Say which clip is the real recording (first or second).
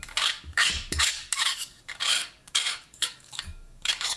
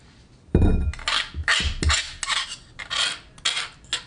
second